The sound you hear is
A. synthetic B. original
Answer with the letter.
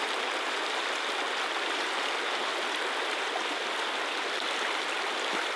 B